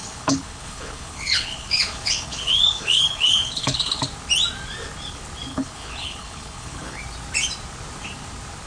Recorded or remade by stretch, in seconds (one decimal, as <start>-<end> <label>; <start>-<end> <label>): 0.0-4.0 remade; 4.0-5.5 recorded; 5.5-7.0 remade; 7.0-8.7 recorded